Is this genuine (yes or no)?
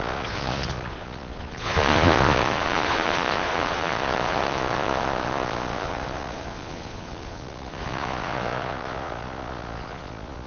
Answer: no